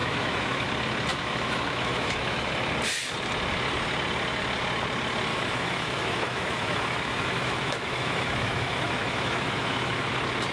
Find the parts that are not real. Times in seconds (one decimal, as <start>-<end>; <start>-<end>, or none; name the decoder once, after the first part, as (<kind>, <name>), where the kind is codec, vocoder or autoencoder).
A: 0.0-0.7 (autoencoder, DAC-VAE); 1.1-2.5; 5.3-10.1